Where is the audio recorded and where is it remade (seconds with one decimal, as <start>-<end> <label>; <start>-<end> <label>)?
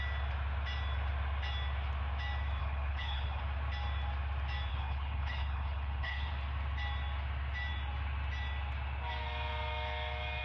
0.0-2.6 recorded; 2.6-3.4 remade; 3.4-4.7 recorded; 4.7-6.3 remade; 6.3-10.4 recorded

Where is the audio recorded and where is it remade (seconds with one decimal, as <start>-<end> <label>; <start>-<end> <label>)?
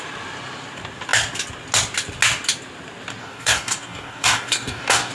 0.0-3.2 recorded; 3.2-5.1 remade